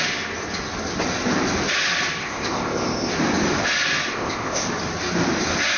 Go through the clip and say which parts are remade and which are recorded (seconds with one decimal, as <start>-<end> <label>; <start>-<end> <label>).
0.0-2.2 recorded; 2.2-3.1 remade; 3.1-4.1 recorded; 4.1-4.7 remade; 4.7-5.8 recorded